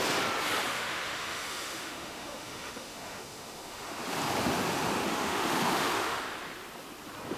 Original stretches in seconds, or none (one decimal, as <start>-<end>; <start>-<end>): 0.0-0.7; 4.0-5.0; 6.2-7.4